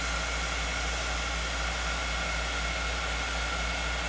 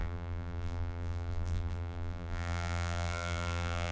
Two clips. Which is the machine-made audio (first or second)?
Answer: second